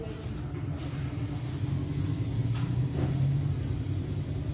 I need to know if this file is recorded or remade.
recorded